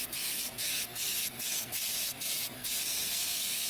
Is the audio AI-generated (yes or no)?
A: yes